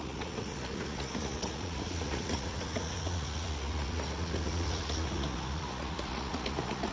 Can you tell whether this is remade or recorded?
remade